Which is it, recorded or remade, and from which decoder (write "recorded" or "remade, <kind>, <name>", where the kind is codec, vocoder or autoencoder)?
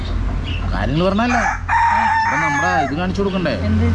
recorded